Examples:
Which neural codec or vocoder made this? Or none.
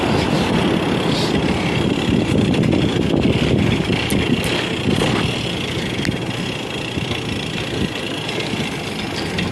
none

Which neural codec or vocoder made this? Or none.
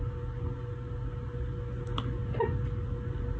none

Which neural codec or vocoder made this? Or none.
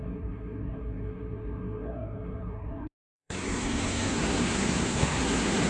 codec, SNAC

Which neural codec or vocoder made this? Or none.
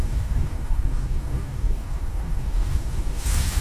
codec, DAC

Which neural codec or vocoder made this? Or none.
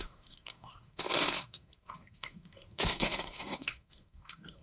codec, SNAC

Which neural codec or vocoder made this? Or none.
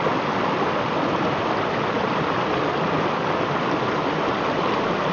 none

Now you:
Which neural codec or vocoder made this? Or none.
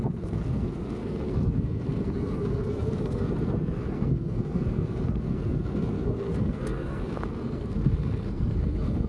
codec, SNAC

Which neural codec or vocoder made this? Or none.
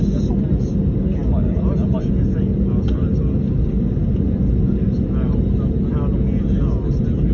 none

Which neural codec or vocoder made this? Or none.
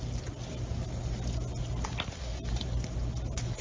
none